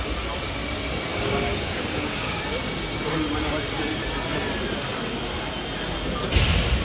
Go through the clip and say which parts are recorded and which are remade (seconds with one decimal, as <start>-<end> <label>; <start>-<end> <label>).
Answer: 0.0-1.1 recorded; 1.1-2.4 remade; 2.4-6.8 recorded